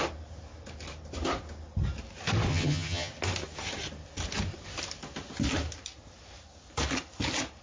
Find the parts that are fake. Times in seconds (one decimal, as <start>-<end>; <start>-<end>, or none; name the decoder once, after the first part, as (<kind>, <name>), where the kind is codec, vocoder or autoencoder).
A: 2.5-3.1 (vocoder, HiFi-GAN)